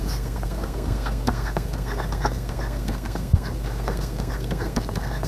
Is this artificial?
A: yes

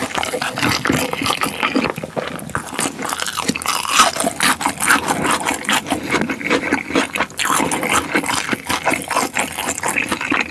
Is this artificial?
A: no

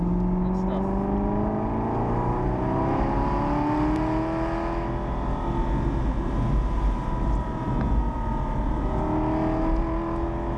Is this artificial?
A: no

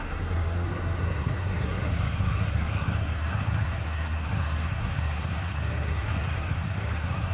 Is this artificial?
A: yes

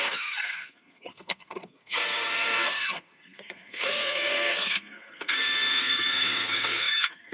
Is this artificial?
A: yes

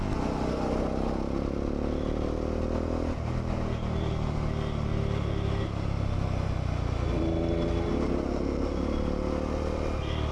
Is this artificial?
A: no